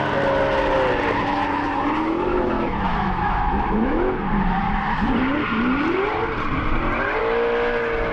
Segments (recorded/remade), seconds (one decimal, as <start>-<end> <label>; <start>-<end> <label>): 0.0-2.3 recorded; 2.3-4.2 remade; 4.2-8.1 recorded